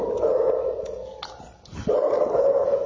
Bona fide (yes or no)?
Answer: yes